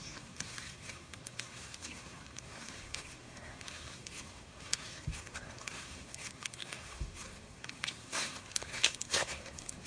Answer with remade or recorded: remade